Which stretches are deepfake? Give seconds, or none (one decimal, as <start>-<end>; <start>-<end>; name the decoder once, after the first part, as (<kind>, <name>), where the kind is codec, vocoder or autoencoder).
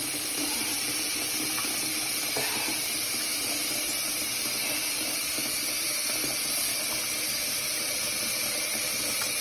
4.9-9.4 (vocoder, BigVGAN v2)